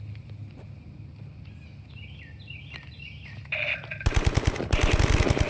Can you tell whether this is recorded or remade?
recorded